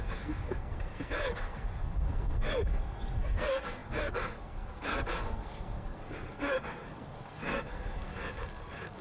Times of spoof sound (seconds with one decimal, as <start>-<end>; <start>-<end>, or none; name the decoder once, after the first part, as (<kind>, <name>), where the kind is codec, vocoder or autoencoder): 0.0-9.0 (codec, SNAC)